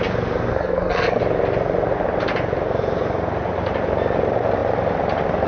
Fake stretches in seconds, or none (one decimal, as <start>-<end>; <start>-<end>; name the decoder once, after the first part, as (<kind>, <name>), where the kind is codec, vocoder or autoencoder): 0.5-1.2 (codec, SNAC)